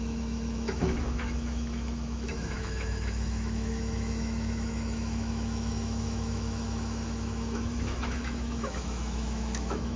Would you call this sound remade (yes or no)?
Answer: yes